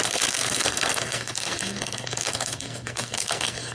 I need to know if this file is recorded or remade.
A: remade